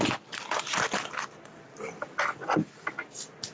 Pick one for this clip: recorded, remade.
recorded